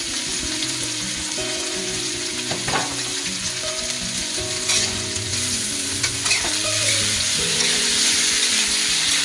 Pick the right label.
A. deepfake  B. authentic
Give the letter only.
A